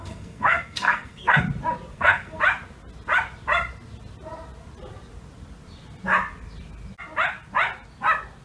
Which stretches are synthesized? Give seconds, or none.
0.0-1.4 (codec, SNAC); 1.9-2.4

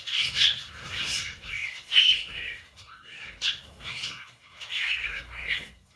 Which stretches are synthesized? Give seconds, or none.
0.0-6.0 (codec, SNAC)

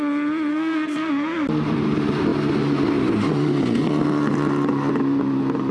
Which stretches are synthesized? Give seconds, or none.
0.5-1.1 (codec, SNAC)

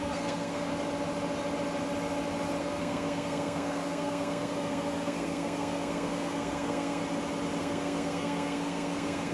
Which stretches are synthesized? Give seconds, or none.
0.0-0.7 (codec, SNAC); 2.6-7.0; 7.6-9.3